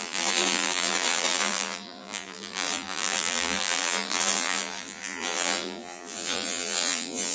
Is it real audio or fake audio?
fake